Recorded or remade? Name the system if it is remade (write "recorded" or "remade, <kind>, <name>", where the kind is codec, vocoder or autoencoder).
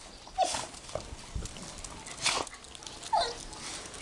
recorded